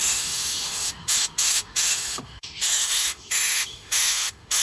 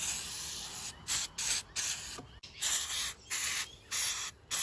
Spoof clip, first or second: first